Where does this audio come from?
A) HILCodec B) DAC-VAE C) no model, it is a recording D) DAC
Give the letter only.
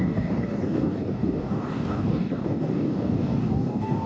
D